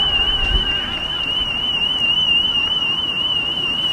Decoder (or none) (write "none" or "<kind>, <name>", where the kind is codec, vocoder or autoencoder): vocoder, BigVGAN v2